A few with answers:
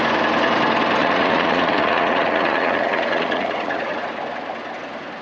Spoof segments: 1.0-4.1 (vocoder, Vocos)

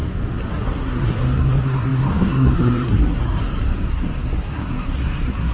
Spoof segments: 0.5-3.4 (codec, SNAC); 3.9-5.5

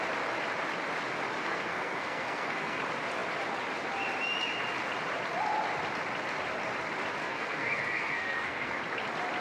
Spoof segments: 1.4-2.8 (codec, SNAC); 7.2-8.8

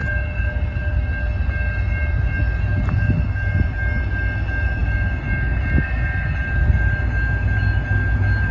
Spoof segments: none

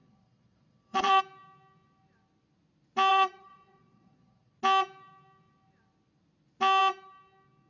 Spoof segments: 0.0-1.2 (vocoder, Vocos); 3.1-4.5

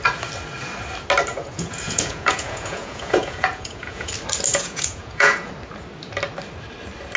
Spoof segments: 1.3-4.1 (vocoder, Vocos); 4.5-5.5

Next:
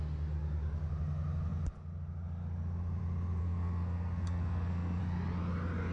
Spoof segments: 3.4-5.0 (codec, SNAC)